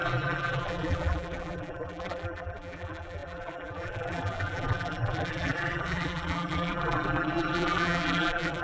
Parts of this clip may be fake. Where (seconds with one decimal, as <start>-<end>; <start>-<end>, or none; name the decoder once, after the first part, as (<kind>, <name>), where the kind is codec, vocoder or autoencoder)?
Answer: 0.0-8.6 (vocoder, BigVGAN v2)